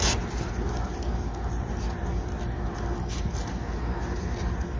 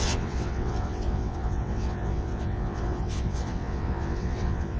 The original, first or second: first